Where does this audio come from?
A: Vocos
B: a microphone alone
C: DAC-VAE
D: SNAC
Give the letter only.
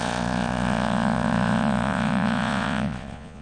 A